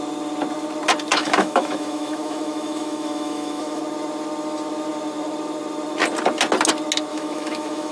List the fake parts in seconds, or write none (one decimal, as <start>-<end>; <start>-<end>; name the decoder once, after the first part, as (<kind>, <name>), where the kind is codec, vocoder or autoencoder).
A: 1.1-3.8 (autoencoder, DAC-VAE); 7.1-7.9